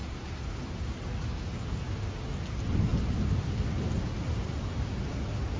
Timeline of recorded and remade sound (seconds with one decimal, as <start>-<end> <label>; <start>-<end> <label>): 0.0-2.4 recorded; 2.4-5.6 remade